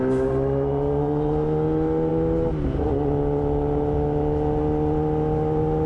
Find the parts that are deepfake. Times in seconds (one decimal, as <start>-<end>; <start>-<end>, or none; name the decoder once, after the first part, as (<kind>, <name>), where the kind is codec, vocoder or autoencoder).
none